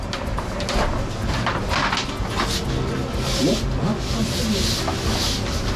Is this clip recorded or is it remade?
recorded